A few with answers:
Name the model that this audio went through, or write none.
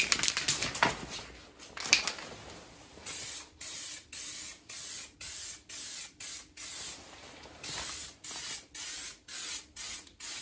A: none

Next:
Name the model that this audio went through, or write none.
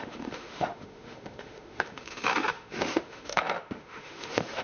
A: autoencoder, DAC-VAE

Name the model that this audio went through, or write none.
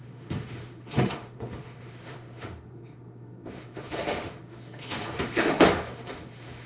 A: autoencoder, DAC-VAE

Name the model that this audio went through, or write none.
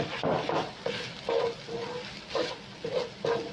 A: none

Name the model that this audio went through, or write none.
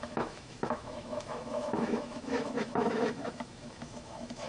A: autoencoder, DAC-VAE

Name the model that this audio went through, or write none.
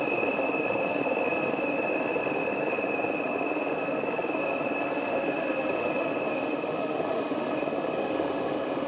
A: autoencoder, DAC-VAE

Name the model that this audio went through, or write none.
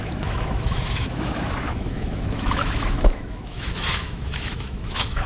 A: autoencoder, DAC-VAE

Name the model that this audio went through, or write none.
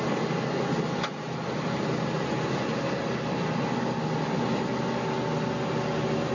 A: none